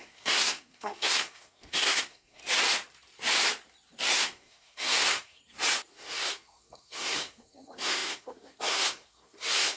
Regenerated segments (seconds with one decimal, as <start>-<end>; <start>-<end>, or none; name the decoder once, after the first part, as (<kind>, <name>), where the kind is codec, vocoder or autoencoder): 0.0-2.4 (codec, SNAC); 4.1-5.4; 5.9-9.8